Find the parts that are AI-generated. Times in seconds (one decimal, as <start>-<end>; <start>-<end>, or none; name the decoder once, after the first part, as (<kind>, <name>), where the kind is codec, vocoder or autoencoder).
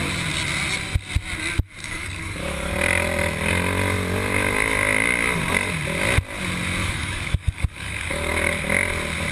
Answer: 1.8-2.7 (codec, DAC); 6.8-8.3